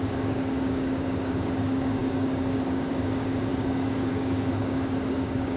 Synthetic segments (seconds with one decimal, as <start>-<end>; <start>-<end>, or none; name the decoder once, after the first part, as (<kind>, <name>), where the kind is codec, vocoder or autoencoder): 0.0-5.6 (codec, DAC)